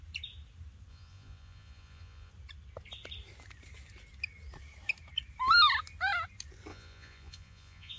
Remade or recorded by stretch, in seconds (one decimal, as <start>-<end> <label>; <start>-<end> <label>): 0.0-0.9 recorded; 0.9-2.3 remade; 2.3-6.7 recorded; 6.7-8.0 remade